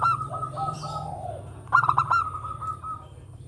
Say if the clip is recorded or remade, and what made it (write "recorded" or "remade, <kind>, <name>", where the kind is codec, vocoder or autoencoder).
remade, vocoder, BigVGAN v2